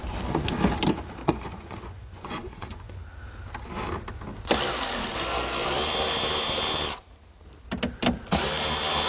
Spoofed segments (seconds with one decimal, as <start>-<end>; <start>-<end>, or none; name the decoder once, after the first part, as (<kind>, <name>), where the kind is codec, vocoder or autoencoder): 1.2-3.0 (vocoder, Vocos)